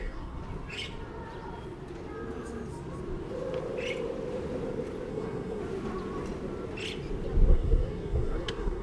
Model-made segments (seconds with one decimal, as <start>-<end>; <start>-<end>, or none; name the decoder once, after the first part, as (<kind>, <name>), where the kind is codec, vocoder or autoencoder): 0.0-0.4 (codec, SNAC); 5.1-5.6; 7.5-8.8